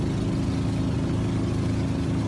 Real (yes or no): yes